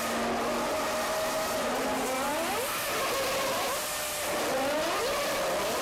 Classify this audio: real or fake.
real